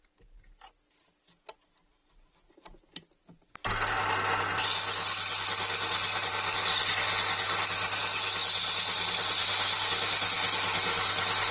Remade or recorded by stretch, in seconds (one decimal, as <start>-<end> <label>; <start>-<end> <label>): 0.0-2.0 recorded; 2.0-4.0 remade; 4.0-11.5 recorded